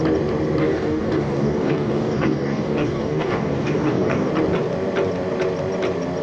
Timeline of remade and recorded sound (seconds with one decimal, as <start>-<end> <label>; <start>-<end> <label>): 0.0-0.6 recorded; 0.6-4.3 remade; 4.3-6.2 recorded